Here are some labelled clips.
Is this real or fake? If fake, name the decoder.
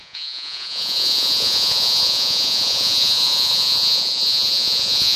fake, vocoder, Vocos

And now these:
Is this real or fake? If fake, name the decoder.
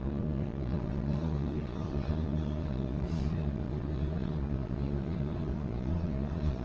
fake, vocoder, Vocos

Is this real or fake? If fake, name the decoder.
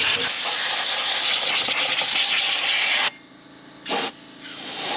real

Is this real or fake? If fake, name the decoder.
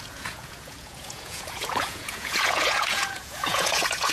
fake, vocoder, Vocos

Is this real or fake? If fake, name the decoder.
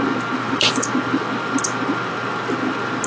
real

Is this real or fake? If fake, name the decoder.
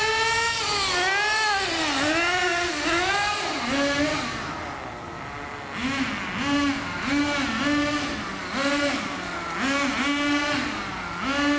real